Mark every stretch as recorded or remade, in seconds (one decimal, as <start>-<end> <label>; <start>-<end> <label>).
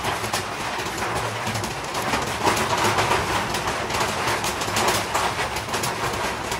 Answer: 0.0-6.6 recorded